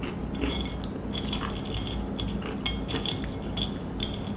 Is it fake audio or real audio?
real